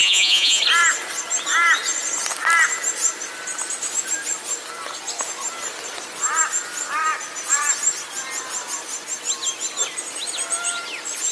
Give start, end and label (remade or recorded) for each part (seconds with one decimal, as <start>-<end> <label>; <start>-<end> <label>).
0.0-0.6 remade; 0.6-11.3 recorded